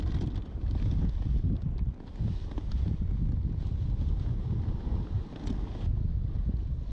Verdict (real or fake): real